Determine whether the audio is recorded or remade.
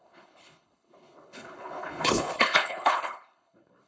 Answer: remade